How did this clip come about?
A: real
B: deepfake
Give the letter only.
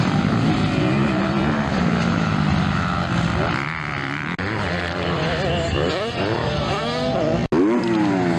A